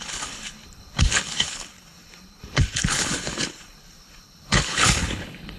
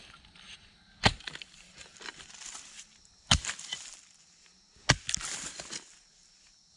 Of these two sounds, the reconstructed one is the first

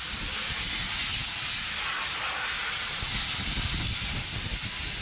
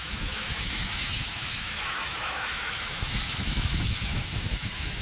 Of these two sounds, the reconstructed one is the second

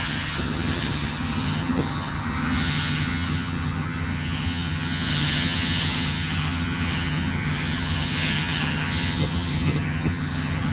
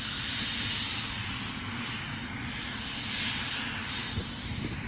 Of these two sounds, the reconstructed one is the first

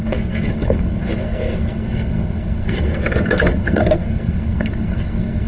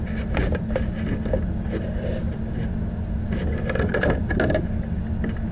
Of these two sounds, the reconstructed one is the first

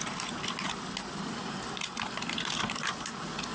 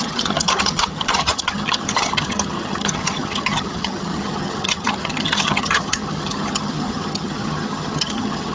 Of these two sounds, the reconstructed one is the second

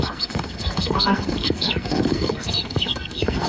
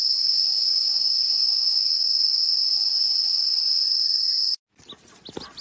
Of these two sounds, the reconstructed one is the first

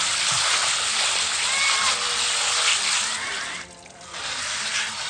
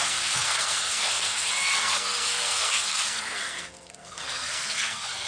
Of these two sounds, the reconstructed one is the second